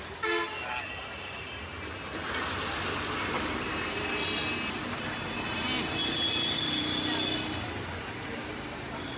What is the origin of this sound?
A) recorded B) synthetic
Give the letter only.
A